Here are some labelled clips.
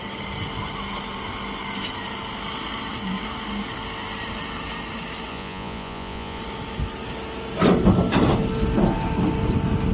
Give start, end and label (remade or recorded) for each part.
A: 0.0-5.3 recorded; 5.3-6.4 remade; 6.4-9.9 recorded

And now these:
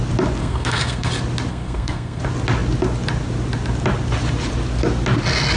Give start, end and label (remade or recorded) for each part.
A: 0.0-0.4 recorded; 0.4-1.1 remade; 1.1-1.5 recorded; 1.5-2.2 remade; 2.2-5.6 recorded

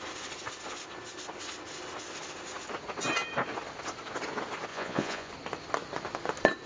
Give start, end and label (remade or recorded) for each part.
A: 0.0-4.7 recorded; 4.7-5.3 remade; 5.3-6.7 recorded

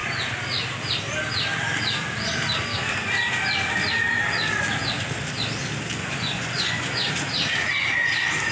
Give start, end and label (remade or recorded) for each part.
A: 0.0-6.0 recorded; 6.0-7.1 remade; 7.1-8.5 recorded

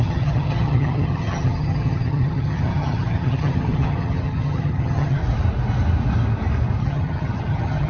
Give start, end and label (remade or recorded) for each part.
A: 0.0-5.2 remade; 5.2-6.8 recorded; 6.8-7.9 remade